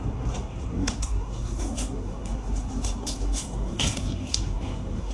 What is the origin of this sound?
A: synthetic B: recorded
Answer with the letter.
A